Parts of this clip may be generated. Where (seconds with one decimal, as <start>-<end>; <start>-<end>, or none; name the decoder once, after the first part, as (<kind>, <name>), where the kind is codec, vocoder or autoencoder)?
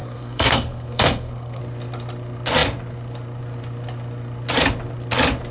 0.0-1.6 (codec, SNAC)